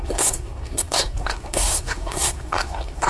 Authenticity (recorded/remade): remade